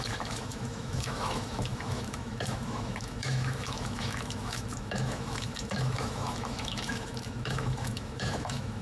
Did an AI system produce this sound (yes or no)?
yes